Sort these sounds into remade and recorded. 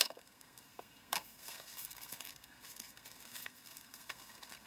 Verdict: remade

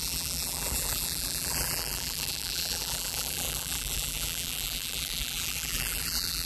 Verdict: remade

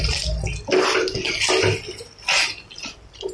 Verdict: recorded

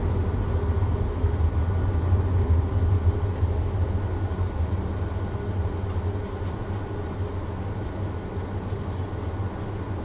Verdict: recorded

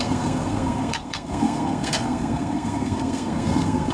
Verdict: remade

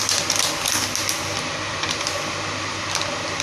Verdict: recorded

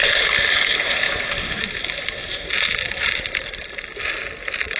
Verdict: recorded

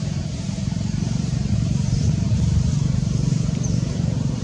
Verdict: remade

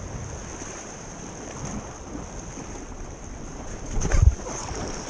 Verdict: recorded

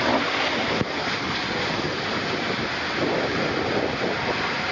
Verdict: recorded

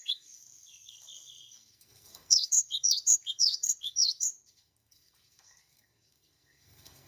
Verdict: remade